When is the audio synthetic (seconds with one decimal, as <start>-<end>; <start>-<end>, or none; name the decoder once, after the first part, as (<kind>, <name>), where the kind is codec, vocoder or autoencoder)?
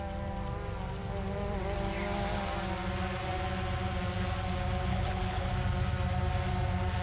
4.9-5.5 (codec, HILCodec)